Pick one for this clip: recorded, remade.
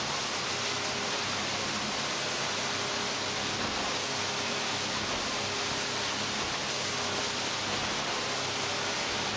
recorded